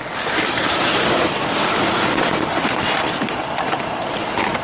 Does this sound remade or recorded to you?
recorded